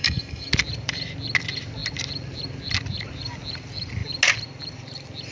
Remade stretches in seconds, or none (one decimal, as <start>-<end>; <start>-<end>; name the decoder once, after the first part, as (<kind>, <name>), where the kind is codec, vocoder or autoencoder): 0.0-0.5 (autoencoder, DAC-VAE)